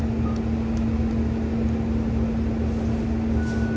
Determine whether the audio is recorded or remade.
recorded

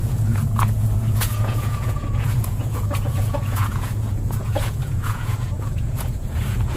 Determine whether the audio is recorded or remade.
remade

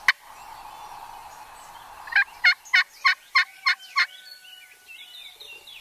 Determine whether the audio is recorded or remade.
recorded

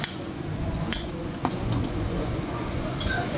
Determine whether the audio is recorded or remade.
remade